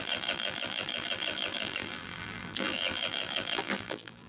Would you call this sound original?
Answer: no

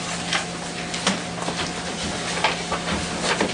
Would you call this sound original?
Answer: yes